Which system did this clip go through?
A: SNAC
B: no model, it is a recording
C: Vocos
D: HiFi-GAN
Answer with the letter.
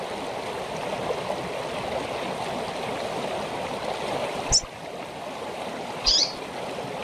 B